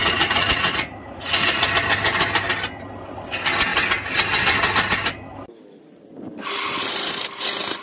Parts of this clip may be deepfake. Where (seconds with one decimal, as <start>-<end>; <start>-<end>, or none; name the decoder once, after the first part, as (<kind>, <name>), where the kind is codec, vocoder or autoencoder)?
0.0-1.7 (vocoder, Vocos)